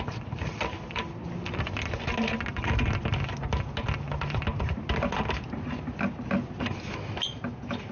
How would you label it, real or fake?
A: real